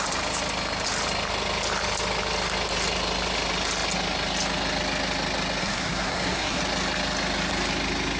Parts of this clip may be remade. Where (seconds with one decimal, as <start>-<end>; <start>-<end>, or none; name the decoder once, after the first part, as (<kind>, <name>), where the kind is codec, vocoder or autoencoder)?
5.6-6.6 (codec, SNAC)